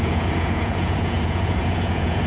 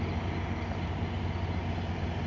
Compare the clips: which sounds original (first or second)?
second